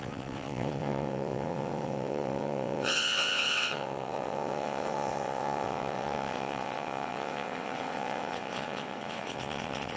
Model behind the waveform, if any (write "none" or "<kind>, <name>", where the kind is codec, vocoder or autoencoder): vocoder, WaveNeXt